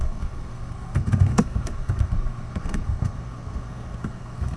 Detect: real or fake fake